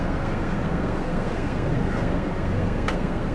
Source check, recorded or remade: remade